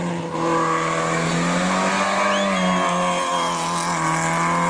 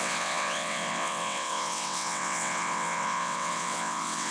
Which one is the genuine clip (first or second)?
first